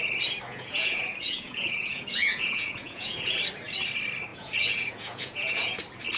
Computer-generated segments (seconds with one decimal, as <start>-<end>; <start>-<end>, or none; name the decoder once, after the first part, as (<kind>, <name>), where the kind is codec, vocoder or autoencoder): 0.5-3.4 (vocoder, Vocos); 4.3-5.8